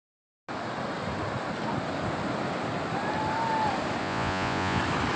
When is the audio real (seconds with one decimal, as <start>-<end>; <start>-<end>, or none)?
0.0-4.0; 4.8-5.2